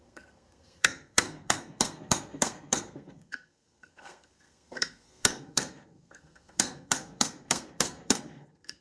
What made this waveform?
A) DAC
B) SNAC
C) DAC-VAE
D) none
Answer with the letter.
B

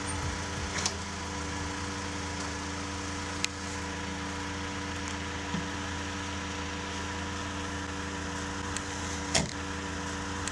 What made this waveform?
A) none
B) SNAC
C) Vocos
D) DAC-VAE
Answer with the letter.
A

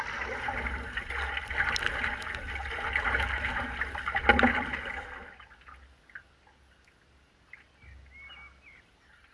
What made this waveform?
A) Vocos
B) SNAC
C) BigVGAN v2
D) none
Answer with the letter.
D